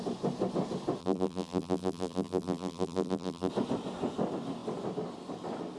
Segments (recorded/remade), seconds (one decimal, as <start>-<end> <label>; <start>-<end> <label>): 0.0-1.0 recorded; 1.0-3.5 remade; 3.5-5.8 recorded